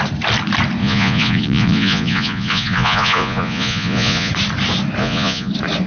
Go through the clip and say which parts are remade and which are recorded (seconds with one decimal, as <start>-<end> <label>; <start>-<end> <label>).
0.0-0.8 recorded; 0.8-4.3 remade; 4.3-5.0 recorded; 5.0-5.5 remade; 5.5-5.9 recorded